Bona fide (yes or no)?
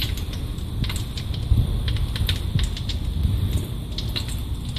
yes